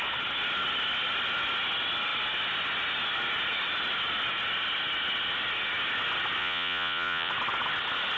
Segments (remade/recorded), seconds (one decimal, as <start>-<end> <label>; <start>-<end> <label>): 0.0-6.4 recorded; 6.4-7.3 remade; 7.3-8.2 recorded